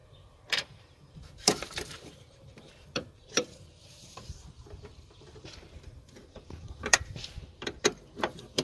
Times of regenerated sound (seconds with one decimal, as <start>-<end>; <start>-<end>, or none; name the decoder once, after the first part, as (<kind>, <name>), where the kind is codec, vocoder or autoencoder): 0.0-8.6 (vocoder, BigVGAN v2)